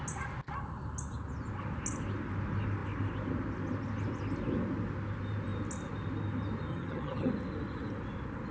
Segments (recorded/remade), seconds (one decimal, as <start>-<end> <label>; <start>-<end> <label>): 0.0-6.7 recorded; 6.7-7.3 remade; 7.3-8.5 recorded